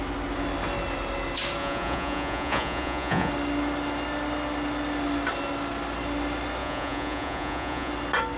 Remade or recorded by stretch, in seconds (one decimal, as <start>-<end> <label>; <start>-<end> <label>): 0.0-1.6 recorded; 1.6-3.3 remade; 3.3-6.6 recorded; 6.6-7.9 remade; 7.9-8.4 recorded